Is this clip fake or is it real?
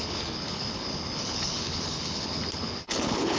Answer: fake